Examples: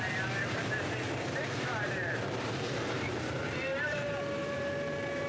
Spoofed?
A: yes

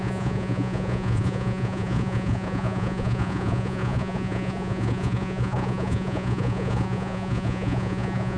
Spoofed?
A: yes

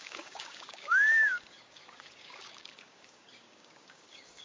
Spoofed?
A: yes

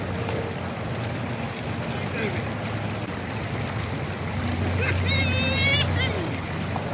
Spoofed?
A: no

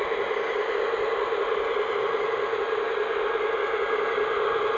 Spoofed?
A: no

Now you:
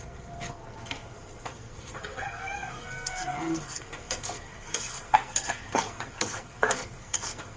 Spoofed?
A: yes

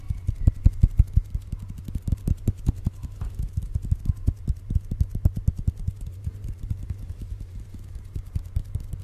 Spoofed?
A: yes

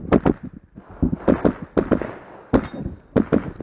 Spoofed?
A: no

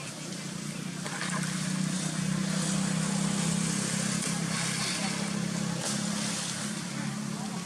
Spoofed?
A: no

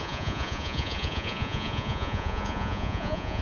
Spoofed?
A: yes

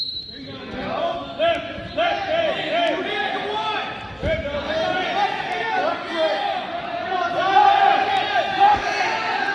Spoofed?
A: no